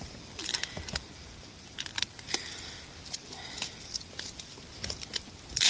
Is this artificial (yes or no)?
yes